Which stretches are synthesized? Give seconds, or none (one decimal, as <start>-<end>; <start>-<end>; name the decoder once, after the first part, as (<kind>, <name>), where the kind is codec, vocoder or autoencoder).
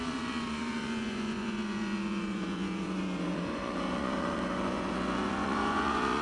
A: 0.0-6.2 (vocoder, Vocos)